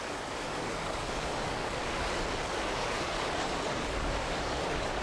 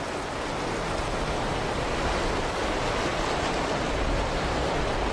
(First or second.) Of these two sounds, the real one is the second